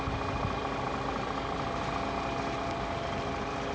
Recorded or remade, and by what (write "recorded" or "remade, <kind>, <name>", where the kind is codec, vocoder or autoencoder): recorded